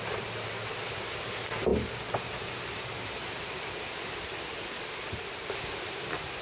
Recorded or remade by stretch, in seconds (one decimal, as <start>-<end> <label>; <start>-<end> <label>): 0.0-6.4 recorded